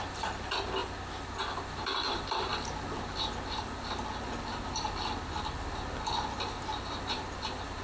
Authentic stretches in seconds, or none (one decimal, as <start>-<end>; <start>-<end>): 0.8-1.7; 2.5-7.2